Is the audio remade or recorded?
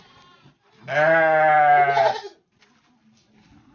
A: recorded